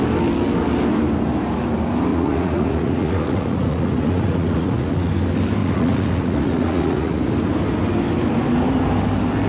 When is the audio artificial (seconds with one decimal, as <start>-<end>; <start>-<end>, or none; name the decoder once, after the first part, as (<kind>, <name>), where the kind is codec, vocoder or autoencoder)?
2.1-5.1 (vocoder, Vocos); 5.6-7.3